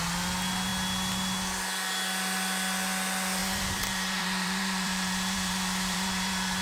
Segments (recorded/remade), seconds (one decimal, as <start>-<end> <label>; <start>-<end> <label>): 0.0-3.4 recorded; 3.4-6.6 remade